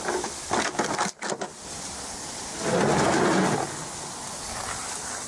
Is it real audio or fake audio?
real